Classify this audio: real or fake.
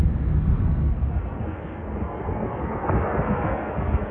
fake